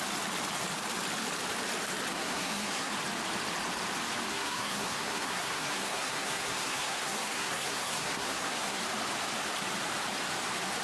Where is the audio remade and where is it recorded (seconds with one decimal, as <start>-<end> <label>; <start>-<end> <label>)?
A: 0.0-2.1 recorded; 2.1-2.9 remade; 2.9-4.3 recorded; 4.3-8.8 remade; 8.8-10.8 recorded